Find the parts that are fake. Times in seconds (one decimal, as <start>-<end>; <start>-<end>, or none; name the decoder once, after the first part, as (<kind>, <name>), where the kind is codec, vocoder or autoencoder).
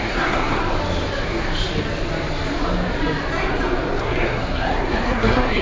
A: 0.0-0.6 (codec, SNAC); 4.0-5.6